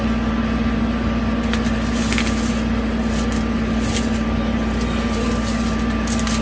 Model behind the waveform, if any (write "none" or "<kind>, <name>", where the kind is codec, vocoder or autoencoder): none